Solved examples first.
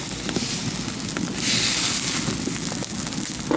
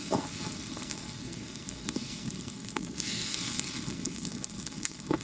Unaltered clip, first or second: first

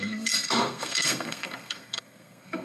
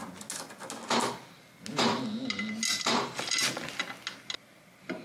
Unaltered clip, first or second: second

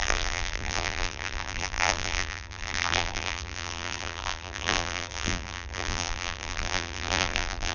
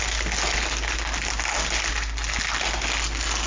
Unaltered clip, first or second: second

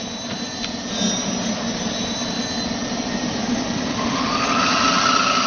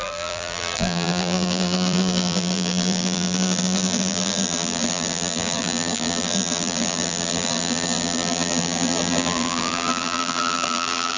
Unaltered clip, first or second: first